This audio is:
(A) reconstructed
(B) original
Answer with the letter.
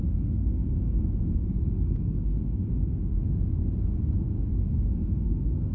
A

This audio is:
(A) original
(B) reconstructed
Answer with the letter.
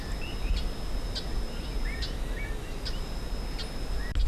A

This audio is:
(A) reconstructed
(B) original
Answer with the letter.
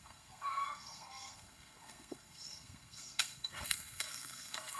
A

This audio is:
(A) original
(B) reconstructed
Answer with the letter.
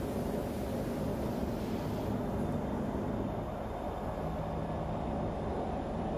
A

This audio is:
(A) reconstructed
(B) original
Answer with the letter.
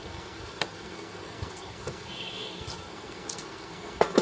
A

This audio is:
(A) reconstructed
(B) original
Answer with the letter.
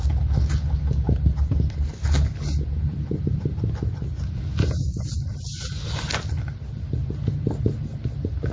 B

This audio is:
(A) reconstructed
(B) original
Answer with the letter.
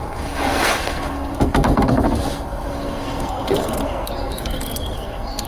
A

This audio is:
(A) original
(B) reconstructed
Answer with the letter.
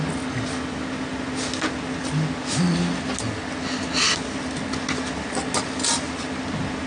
A